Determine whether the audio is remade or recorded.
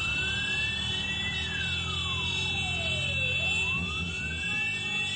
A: recorded